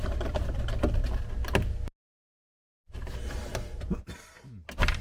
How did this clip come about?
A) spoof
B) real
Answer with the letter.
B